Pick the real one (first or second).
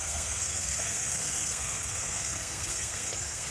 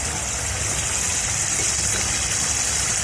second